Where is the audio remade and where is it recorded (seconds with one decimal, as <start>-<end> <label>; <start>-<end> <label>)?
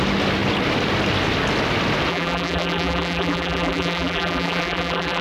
0.0-2.1 recorded; 2.1-5.2 remade